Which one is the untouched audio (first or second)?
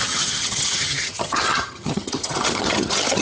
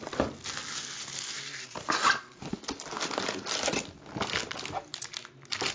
second